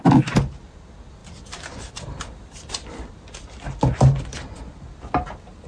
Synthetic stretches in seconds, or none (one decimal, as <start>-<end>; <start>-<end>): 1.2-3.1